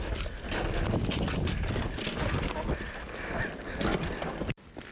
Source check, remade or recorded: recorded